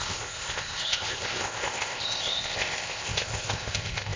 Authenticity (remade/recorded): remade